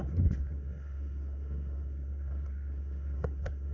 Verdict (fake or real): fake